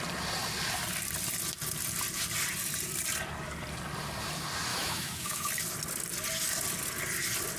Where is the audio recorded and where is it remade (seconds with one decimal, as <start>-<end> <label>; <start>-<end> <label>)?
0.0-4.7 recorded; 4.7-5.5 remade; 5.5-7.6 recorded